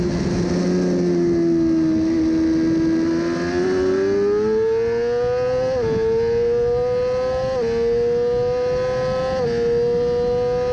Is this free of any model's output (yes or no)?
yes